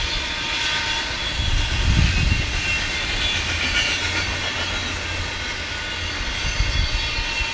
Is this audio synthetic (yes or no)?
no